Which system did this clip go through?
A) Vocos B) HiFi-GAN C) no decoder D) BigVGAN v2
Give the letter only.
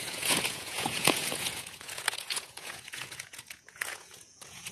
A